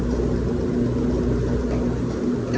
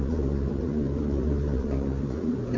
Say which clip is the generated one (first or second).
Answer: second